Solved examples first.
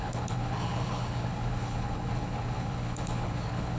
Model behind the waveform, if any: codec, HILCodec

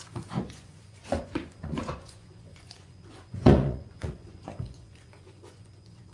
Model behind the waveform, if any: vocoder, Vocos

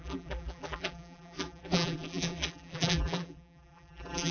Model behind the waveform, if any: vocoder, BigVGAN v2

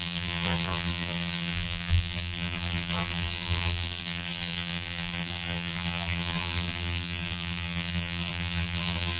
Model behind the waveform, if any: vocoder, BigVGAN v2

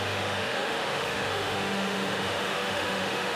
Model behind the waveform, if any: autoencoder, DAC-VAE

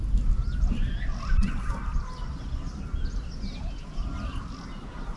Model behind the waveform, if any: none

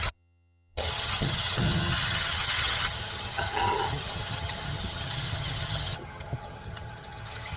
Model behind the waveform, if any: vocoder, HiFi-GAN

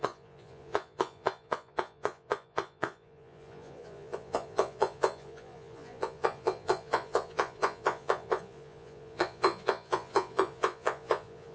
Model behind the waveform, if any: vocoder, Vocos